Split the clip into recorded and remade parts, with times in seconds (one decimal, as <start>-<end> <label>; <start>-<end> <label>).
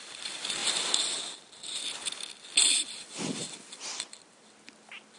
0.0-5.2 recorded